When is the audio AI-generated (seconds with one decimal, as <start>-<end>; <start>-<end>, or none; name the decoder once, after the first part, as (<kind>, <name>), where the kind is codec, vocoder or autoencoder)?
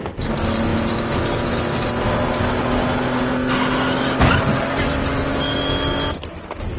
none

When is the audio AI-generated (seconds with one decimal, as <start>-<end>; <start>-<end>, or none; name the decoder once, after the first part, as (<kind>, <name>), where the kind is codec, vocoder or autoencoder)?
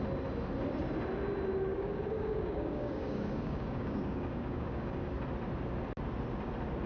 1.7-5.0 (codec, DAC)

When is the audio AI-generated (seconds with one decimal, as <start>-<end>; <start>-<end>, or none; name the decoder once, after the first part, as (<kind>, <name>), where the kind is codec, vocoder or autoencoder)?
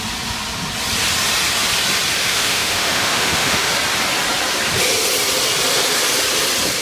2.2-3.7 (autoencoder, DAC-VAE)